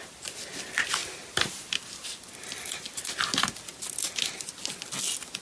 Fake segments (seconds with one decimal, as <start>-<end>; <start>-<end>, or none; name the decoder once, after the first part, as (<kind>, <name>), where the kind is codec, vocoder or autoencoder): none